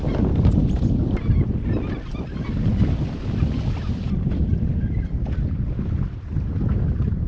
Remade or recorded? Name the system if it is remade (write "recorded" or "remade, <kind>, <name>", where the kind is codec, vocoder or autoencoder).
recorded